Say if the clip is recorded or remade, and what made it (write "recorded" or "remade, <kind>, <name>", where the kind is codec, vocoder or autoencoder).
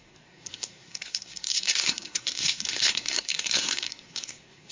remade, codec, SNAC